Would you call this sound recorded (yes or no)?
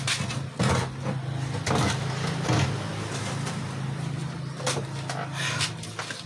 yes